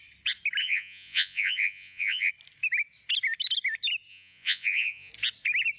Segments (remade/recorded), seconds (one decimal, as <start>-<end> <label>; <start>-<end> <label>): 0.0-0.6 recorded; 0.6-2.3 remade; 2.3-4.1 recorded; 4.1-5.1 remade; 5.1-5.8 recorded